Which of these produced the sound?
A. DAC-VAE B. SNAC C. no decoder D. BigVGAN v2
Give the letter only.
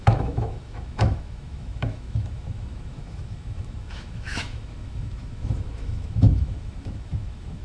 A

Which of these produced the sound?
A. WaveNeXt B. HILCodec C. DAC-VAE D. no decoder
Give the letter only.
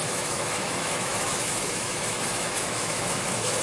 C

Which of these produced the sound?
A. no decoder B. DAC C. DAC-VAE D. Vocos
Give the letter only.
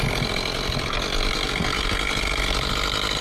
A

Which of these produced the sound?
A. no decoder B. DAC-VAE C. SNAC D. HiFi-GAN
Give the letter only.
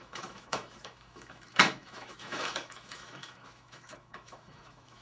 B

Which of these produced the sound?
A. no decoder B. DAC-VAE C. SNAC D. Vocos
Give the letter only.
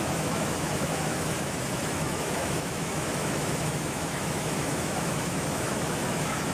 B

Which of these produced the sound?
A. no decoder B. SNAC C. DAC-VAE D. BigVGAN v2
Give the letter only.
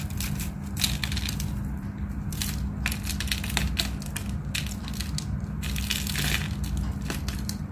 A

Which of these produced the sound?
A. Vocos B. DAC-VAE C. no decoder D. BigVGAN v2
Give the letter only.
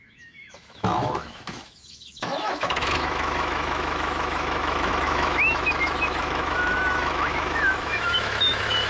B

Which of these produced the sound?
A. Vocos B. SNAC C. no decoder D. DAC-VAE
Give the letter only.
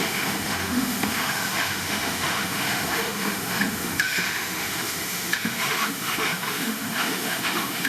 D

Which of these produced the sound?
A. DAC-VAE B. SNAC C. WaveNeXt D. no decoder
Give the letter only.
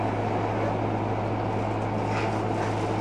D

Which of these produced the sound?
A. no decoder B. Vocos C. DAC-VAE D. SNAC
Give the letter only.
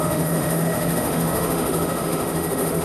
C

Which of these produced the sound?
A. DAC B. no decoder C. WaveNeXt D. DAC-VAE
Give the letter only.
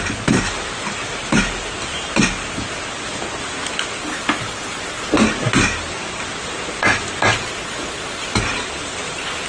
B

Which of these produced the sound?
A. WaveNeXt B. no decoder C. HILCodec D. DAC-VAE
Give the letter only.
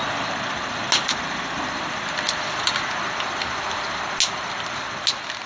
B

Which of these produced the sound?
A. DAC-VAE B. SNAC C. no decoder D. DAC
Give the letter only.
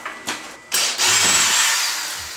C